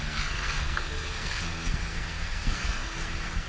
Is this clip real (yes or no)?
no